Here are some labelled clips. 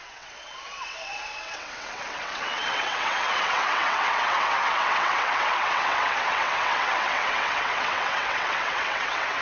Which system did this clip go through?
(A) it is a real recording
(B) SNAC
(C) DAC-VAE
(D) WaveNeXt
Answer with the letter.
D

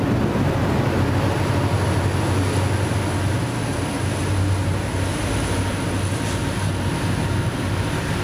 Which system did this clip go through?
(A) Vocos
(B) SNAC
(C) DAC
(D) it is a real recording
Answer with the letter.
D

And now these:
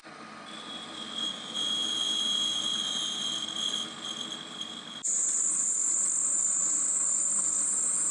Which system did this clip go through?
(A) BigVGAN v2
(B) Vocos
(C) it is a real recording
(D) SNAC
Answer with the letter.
C